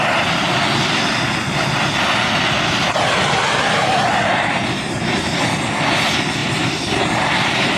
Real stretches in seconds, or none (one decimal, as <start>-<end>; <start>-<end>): 0.0-3.8; 5.7-6.4